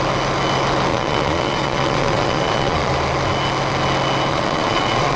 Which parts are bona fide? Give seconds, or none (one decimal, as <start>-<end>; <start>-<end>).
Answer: 0.0-0.9; 2.9-4.3